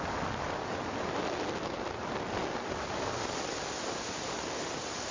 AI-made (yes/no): no